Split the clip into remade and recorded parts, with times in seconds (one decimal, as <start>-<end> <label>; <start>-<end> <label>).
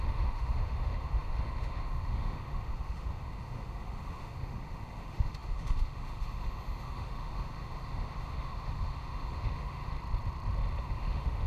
0.0-9.9 remade; 9.9-10.8 recorded; 10.8-11.5 remade